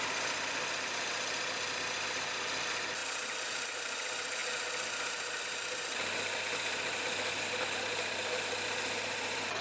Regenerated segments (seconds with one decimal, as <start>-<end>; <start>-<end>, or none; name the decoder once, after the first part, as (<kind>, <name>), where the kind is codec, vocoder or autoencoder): none